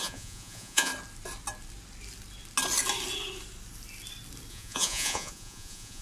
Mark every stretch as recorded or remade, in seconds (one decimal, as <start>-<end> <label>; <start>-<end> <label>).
0.0-0.9 remade; 0.9-4.5 recorded; 4.5-6.0 remade

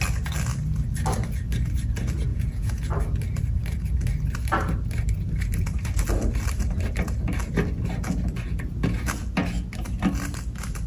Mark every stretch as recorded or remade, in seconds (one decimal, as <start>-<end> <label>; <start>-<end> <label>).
0.0-2.3 recorded; 2.3-2.9 remade; 2.9-10.9 recorded

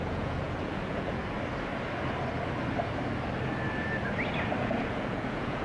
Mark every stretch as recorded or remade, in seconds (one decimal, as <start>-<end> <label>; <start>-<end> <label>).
0.0-1.2 remade; 1.2-4.6 recorded; 4.6-5.6 remade

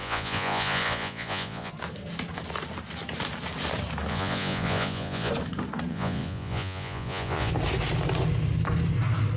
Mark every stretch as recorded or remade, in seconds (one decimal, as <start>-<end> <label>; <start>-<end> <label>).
0.0-1.7 remade; 1.7-4.1 recorded; 4.1-5.3 remade; 5.3-5.9 recorded; 5.9-7.5 remade; 7.5-9.4 recorded

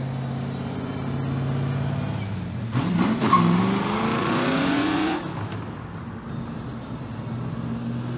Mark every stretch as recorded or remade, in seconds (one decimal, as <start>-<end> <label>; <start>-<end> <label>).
0.0-4.2 recorded; 4.2-5.2 remade; 5.2-8.2 recorded

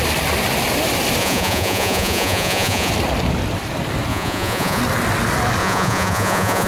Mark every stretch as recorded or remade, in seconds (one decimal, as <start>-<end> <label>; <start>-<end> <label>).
0.0-1.2 recorded; 1.2-2.9 remade; 2.9-4.1 recorded; 4.1-4.8 remade; 4.8-5.6 recorded; 5.6-6.7 remade

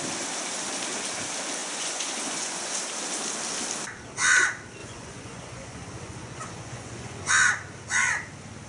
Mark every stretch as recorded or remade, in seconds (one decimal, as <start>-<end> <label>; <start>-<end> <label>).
0.0-1.6 recorded; 1.6-2.8 remade; 2.8-4.8 recorded; 4.8-7.3 remade; 7.3-8.7 recorded